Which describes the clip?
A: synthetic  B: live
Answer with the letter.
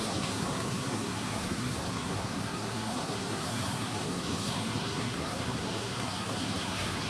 A